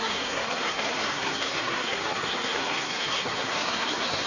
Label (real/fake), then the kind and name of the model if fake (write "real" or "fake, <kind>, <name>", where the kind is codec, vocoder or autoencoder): fake, codec, SNAC